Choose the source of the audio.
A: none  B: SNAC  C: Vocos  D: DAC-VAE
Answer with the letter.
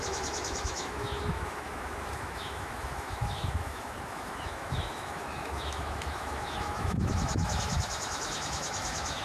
D